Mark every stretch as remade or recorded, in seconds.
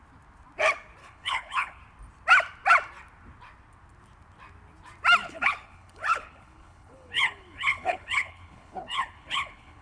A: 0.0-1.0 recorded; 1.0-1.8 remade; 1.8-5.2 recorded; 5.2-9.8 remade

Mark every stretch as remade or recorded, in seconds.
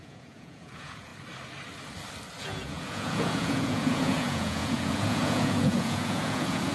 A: 0.0-1.1 remade; 1.1-2.4 recorded; 2.4-6.7 remade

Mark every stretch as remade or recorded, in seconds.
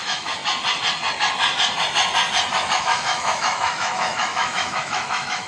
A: 0.0-0.4 remade; 0.4-2.8 recorded; 2.8-5.5 remade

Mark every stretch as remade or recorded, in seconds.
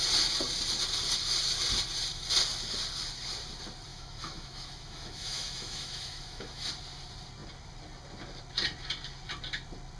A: 0.0-3.9 recorded; 3.9-6.7 remade; 6.7-10.0 recorded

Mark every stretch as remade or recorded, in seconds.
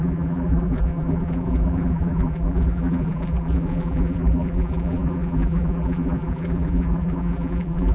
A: 0.0-7.9 remade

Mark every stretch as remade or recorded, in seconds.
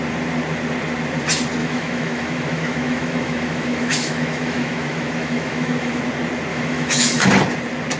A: 0.0-1.6 recorded; 1.6-6.0 remade; 6.0-6.5 recorded; 6.5-7.3 remade; 7.3-8.0 recorded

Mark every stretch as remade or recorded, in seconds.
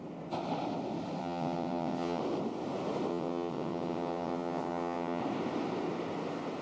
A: 0.0-1.2 recorded; 1.2-2.2 remade; 2.2-3.1 recorded; 3.1-5.2 remade; 5.2-6.6 recorded